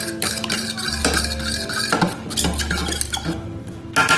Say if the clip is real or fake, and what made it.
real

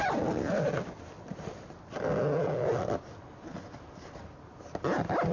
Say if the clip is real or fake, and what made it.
real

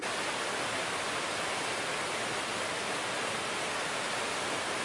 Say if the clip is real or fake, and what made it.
real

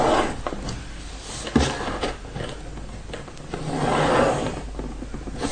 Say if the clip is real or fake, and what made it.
real